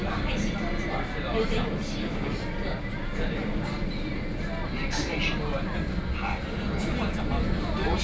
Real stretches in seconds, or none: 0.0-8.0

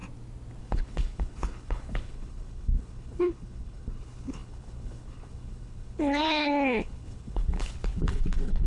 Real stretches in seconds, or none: 0.0-0.6

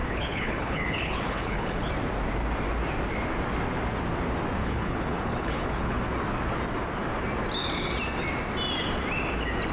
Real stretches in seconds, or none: 1.9-4.6; 6.0-9.7

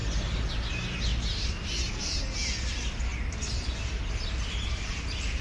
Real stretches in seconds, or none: 0.0-5.4